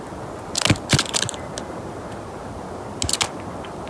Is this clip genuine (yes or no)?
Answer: yes